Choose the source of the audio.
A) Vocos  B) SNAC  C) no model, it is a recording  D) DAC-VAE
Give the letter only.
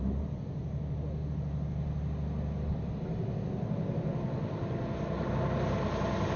C